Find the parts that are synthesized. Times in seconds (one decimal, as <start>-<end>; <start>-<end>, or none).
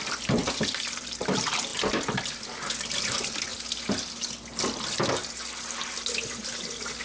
0.0-1.7; 2.4-3.5